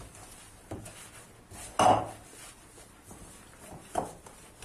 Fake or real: real